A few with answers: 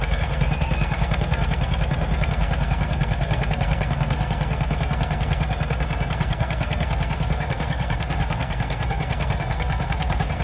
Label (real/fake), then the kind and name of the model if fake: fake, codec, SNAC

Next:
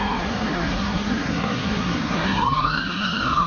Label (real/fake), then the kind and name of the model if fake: fake, codec, SNAC